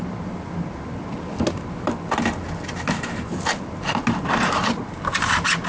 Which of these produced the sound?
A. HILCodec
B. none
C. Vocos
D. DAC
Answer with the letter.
B